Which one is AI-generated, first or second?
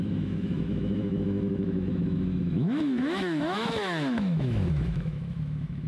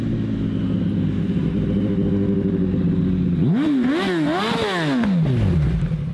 first